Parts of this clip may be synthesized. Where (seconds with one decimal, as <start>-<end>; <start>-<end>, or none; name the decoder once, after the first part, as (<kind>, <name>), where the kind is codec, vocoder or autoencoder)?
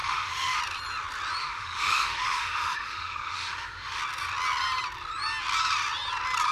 0.0-0.6 (autoencoder, DAC-VAE); 1.4-4.0